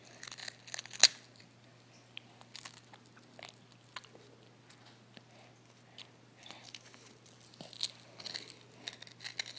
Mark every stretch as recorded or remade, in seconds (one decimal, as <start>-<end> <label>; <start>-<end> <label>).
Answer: 0.0-9.6 recorded